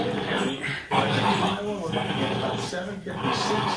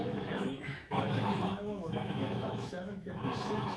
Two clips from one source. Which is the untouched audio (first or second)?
first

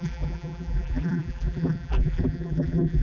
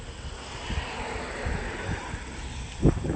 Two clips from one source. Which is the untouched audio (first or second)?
second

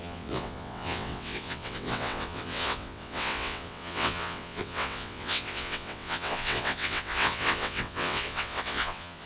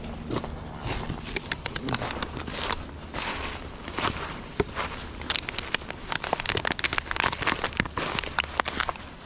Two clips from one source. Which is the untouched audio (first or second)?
second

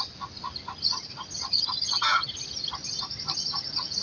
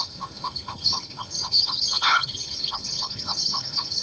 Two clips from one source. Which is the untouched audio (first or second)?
first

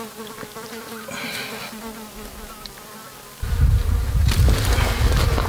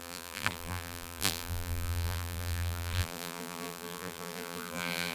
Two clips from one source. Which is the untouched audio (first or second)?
first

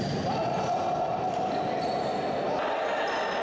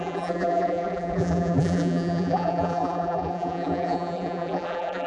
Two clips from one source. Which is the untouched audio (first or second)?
first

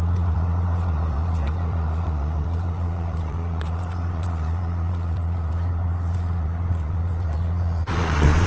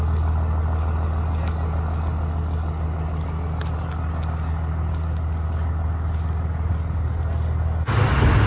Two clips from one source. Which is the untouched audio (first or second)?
second